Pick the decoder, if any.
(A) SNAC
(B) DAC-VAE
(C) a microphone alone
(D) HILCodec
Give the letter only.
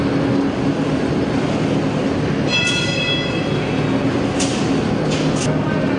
C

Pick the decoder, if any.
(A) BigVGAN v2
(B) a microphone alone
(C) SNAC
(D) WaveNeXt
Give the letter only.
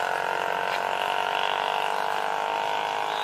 B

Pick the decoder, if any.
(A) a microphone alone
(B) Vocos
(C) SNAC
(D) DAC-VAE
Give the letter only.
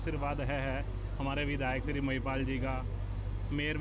A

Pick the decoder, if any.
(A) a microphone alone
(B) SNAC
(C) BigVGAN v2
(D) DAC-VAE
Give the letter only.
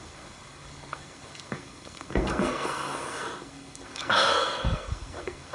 B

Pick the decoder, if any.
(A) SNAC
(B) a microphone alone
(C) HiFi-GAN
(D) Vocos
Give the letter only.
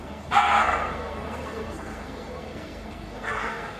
A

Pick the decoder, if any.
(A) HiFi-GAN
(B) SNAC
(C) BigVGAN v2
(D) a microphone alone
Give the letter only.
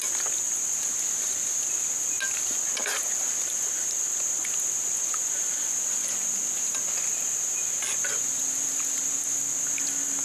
D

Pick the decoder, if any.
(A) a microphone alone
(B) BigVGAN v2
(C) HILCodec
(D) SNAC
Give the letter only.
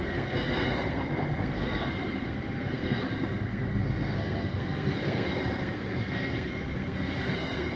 D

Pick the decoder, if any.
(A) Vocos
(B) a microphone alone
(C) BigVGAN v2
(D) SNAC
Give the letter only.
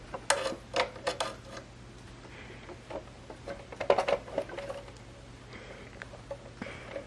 B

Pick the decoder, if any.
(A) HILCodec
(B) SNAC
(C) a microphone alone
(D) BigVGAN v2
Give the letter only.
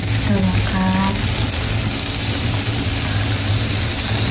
C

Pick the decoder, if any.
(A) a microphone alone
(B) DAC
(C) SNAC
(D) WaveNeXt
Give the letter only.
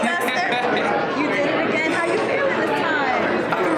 A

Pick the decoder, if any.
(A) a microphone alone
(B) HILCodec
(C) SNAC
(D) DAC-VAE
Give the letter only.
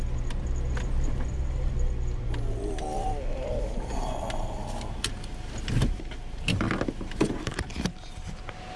A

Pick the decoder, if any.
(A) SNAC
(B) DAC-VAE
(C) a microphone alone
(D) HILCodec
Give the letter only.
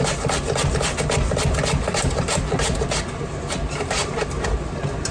C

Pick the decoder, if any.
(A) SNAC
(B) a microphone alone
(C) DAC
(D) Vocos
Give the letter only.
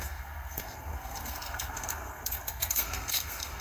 A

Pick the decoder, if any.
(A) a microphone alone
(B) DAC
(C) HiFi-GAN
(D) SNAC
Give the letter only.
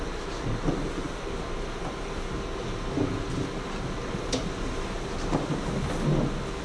A